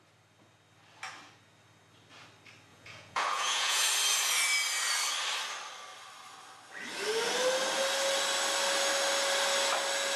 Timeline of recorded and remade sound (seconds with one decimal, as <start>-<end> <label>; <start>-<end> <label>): 0.0-2.7 recorded; 2.7-3.8 remade; 3.8-10.2 recorded